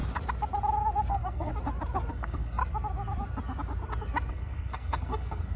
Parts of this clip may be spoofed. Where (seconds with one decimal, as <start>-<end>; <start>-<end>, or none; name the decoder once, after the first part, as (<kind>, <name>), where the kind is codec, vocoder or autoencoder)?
1.1-1.5 (codec, SNAC); 2.1-2.6; 4.3-5.6

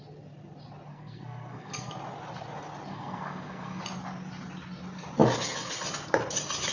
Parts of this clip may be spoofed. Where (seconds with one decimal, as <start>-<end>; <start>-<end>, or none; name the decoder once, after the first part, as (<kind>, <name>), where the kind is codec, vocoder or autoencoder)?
0.9-1.9 (codec, SNAC); 2.9-3.8

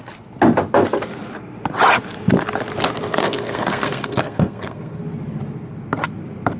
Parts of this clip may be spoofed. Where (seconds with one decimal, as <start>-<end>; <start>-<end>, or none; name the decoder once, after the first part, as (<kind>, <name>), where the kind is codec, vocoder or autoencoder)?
3.2-5.0 (codec, SNAC)

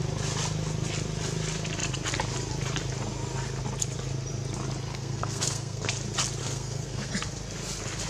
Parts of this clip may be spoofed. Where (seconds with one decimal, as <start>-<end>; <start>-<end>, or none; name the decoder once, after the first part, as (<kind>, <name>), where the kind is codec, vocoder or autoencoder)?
4.9-5.9 (codec, SNAC); 6.4-7.1

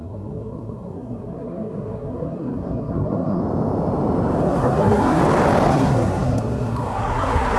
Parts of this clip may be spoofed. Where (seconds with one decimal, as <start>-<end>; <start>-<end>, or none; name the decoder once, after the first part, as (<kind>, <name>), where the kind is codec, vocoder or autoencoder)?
0.0-3.4 (codec, SNAC); 4.4-5.2; 5.7-7.6

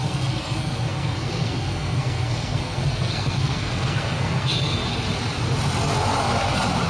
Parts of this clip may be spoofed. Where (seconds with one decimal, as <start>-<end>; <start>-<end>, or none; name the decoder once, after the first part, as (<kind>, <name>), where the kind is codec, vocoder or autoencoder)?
0.0-4.8 (codec, SNAC)

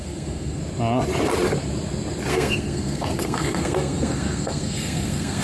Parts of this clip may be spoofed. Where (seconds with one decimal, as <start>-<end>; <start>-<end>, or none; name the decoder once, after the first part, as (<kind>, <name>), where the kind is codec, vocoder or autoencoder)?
0.0-0.6 (codec, SNAC); 2.3-5.4